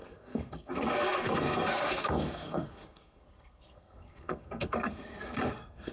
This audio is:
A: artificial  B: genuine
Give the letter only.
A